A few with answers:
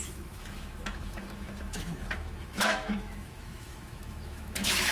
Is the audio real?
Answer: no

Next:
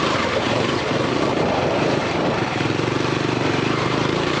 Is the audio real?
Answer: no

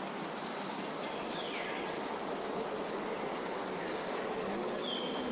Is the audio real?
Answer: yes